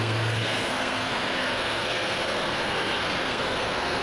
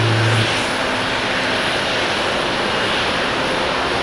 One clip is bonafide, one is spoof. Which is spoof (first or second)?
first